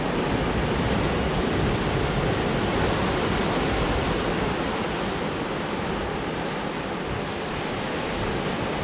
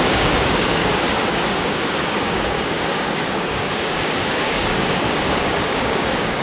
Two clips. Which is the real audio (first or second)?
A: first